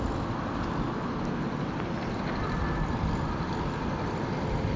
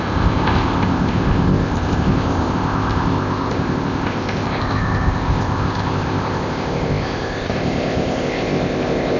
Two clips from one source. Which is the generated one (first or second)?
second